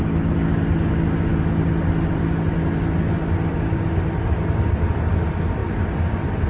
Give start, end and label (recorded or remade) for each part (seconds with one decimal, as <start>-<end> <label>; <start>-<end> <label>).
0.0-6.5 recorded